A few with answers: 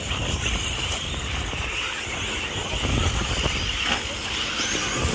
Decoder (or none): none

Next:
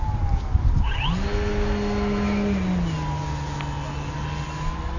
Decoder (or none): none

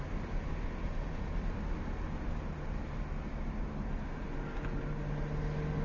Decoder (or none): none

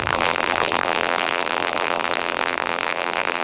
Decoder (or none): vocoder, BigVGAN v2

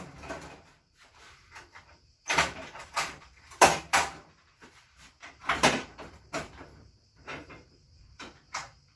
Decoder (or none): vocoder, BigVGAN v2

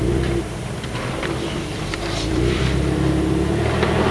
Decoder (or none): vocoder, BigVGAN v2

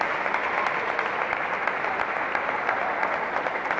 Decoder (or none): none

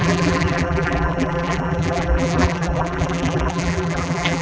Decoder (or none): vocoder, BigVGAN v2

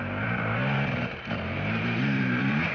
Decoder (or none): vocoder, BigVGAN v2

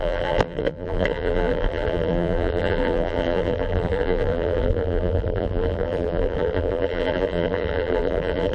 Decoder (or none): vocoder, BigVGAN v2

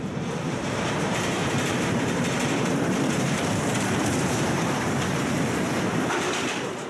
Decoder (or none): vocoder, BigVGAN v2